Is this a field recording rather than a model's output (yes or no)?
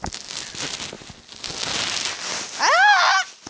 yes